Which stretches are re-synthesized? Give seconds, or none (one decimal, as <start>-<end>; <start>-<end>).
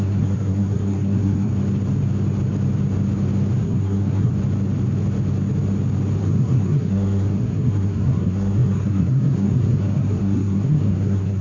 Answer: 0.0-1.5; 3.6-4.3; 6.2-11.4